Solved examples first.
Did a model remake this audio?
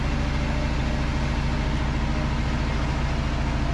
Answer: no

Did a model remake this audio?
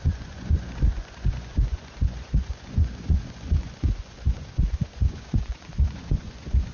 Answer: yes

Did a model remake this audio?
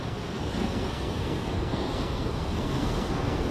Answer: yes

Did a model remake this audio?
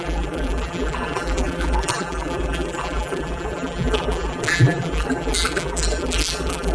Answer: yes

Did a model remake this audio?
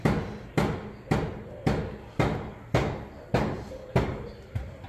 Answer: no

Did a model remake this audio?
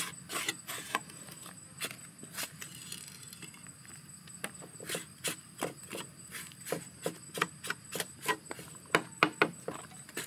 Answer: no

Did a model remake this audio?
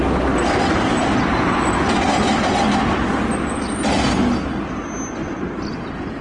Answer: no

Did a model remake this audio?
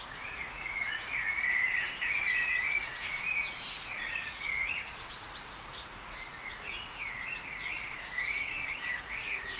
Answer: yes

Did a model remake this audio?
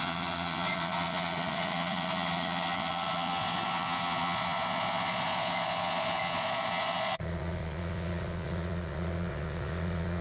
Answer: yes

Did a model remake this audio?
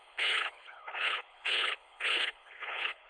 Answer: yes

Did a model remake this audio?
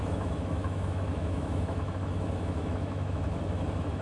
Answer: yes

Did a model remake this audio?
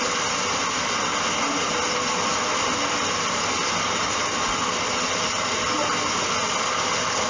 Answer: no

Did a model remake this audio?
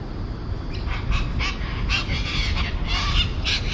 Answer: no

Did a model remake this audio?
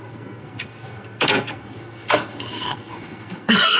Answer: yes